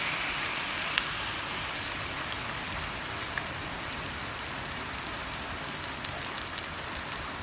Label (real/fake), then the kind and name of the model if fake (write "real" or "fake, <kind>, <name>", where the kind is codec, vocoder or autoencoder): real